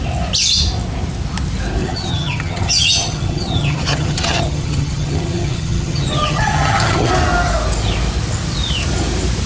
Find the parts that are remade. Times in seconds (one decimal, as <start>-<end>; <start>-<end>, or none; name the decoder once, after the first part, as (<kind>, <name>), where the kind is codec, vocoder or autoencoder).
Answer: 1.8-7.1 (vocoder, HiFi-GAN)